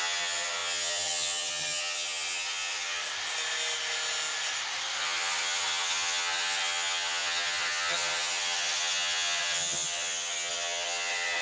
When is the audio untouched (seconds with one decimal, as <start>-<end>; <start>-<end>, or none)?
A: 3.0-5.0